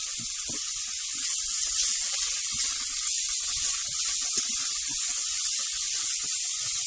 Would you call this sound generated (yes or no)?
no